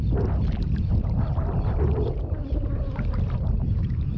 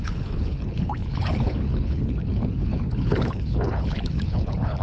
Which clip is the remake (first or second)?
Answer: second